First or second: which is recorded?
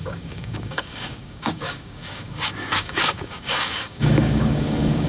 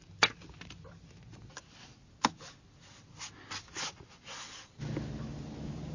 second